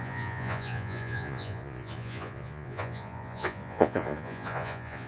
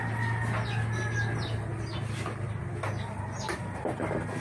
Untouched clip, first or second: second